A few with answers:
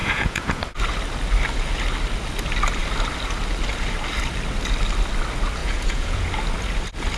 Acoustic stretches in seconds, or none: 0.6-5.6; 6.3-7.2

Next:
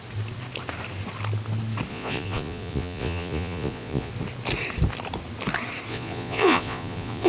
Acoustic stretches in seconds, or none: 0.0-1.9; 4.1-5.9